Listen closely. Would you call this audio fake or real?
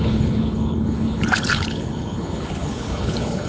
fake